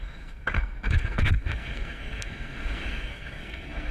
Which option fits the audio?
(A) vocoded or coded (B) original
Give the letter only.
A